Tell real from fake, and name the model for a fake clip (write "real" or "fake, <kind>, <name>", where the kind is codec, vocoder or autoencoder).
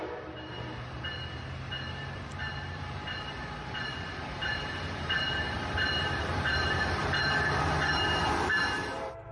fake, vocoder, BigVGAN v2